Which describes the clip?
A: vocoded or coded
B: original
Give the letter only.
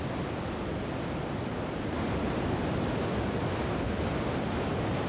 B